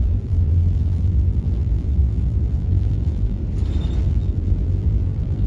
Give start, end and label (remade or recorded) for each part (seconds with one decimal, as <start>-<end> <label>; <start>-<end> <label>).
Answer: 0.0-3.4 remade; 3.4-4.0 recorded; 4.0-5.5 remade